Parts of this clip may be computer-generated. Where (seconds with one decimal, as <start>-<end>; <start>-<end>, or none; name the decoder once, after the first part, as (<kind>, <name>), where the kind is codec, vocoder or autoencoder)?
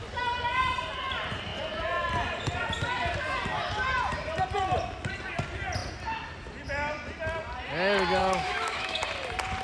8.2-9.0 (autoencoder, DAC-VAE)